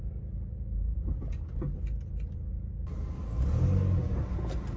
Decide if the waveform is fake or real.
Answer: real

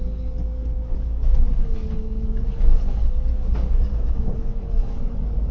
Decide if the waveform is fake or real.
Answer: fake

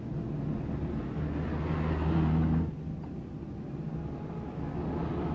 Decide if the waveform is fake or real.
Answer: real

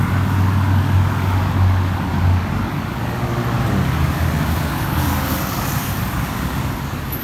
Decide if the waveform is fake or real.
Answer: fake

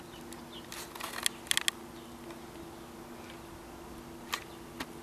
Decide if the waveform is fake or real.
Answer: real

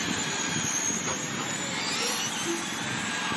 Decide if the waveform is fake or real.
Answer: real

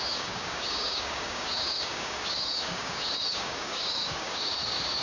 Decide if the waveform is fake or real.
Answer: fake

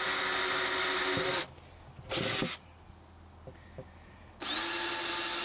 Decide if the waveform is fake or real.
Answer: real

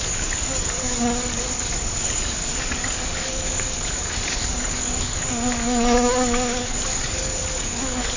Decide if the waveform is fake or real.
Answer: fake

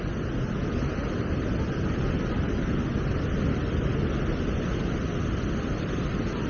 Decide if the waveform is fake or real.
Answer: real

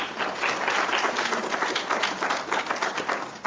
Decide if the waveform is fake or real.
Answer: real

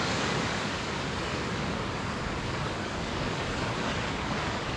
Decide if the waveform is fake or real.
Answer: fake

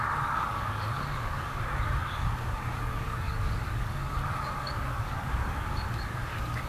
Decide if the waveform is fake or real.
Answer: fake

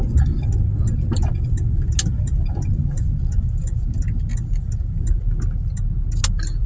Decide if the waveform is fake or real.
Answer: real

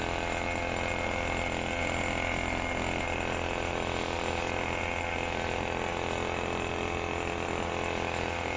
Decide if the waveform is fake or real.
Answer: real